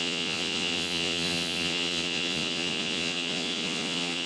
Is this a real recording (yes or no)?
no